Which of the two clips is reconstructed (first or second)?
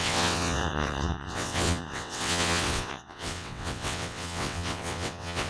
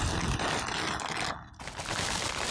first